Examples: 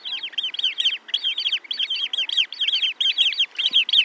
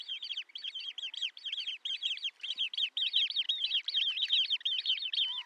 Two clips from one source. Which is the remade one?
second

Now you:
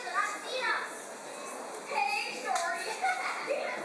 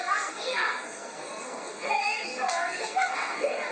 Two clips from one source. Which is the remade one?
second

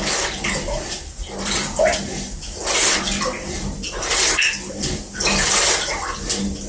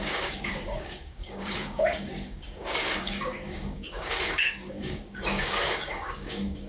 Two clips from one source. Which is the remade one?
second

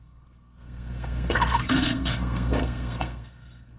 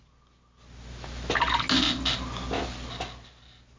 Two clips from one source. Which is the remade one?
first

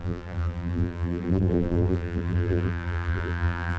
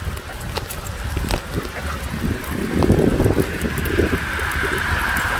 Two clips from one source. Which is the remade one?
first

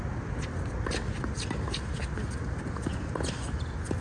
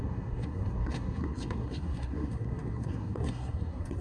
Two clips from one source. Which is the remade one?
second